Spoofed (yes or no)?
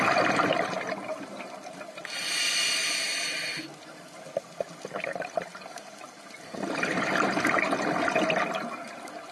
no